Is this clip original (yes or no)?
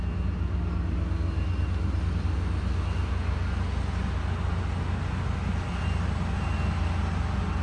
yes